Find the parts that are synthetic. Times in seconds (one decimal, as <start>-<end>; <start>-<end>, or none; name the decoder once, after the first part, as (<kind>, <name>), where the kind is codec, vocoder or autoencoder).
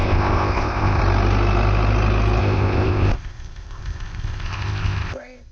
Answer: 0.0-1.0 (codec, ZipCodec); 2.4-5.5